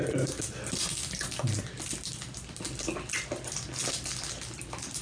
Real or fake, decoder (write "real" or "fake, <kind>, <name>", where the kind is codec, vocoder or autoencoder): real